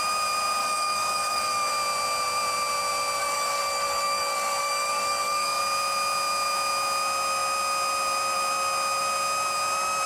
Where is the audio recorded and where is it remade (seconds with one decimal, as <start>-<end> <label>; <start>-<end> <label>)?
0.0-0.6 recorded; 0.6-1.7 remade; 1.7-3.2 recorded; 3.2-5.6 remade; 5.6-10.1 recorded